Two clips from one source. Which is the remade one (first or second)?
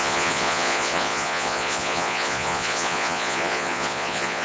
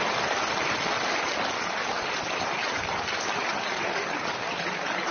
first